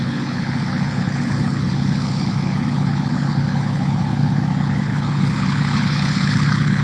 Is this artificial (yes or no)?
yes